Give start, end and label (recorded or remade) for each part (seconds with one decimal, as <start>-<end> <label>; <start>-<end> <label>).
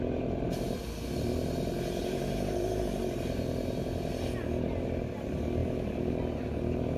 0.0-2.0 recorded; 2.0-3.8 remade; 3.8-5.6 recorded; 5.6-6.1 remade; 6.1-7.0 recorded